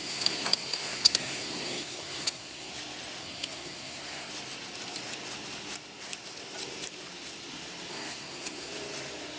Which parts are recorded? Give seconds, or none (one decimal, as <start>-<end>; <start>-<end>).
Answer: 2.7-3.2; 4.3-7.9; 8.7-9.4